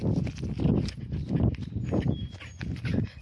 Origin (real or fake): real